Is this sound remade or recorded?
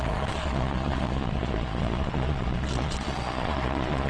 remade